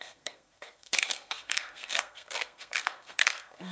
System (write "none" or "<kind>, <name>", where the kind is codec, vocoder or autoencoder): codec, SNAC